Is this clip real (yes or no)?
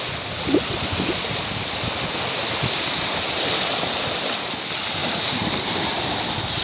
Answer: yes